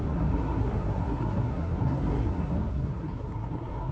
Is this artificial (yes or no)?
yes